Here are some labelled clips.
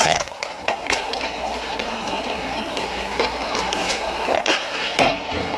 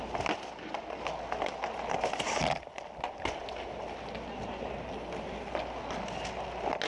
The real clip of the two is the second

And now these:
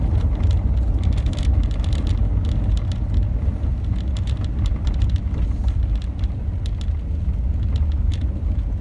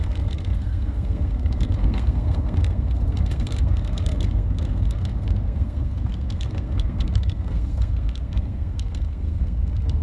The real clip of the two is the first